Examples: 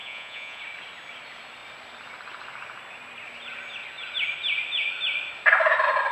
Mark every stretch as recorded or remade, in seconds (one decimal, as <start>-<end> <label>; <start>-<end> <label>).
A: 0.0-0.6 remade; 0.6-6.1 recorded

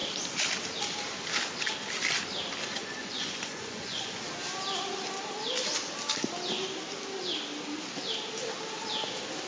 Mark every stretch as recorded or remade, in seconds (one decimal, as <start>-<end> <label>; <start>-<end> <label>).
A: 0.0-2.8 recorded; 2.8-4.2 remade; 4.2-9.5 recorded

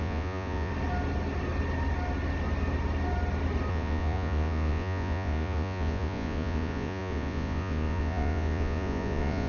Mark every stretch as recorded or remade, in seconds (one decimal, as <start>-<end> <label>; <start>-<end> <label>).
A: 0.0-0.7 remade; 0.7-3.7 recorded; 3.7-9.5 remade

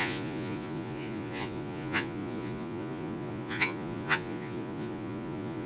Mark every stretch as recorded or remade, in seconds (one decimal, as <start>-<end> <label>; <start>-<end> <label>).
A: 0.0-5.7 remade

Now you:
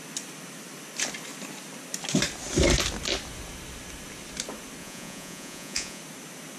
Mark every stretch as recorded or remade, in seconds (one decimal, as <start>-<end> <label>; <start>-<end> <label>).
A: 0.0-4.8 recorded; 4.8-6.0 remade; 6.0-6.6 recorded

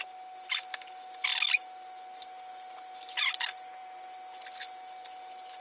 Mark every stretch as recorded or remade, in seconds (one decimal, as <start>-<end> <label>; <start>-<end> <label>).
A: 0.0-5.6 recorded

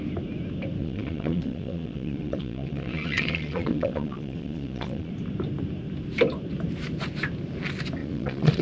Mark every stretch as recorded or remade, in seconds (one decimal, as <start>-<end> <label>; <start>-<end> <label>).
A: 0.0-0.8 recorded; 0.8-5.1 remade; 5.1-8.0 recorded; 8.0-8.6 remade

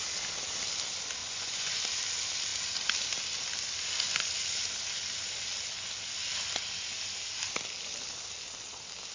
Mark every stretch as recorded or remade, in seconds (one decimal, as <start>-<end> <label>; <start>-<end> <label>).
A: 0.0-1.2 recorded; 1.2-1.8 remade; 1.8-9.1 recorded